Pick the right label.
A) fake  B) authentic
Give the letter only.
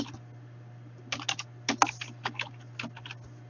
B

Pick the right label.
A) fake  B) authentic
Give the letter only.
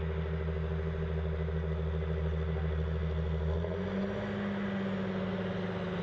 B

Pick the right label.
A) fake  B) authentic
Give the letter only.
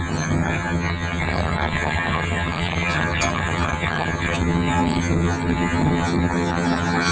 A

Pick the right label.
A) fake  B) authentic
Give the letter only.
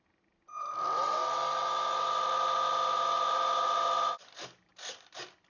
B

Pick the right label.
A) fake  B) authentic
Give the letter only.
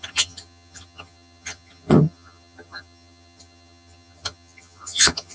A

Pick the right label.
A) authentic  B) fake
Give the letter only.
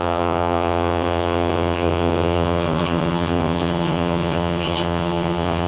B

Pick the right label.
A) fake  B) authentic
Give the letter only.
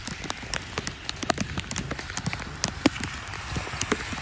B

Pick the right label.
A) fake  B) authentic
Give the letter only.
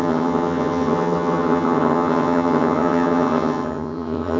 A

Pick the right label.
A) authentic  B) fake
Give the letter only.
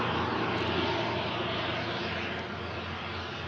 A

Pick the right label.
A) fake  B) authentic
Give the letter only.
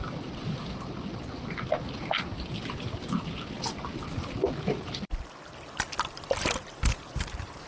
B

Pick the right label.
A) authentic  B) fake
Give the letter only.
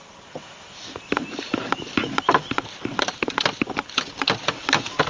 A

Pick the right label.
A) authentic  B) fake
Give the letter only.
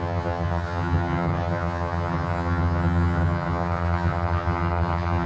B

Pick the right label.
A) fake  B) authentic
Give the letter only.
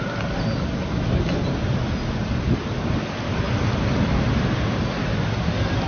B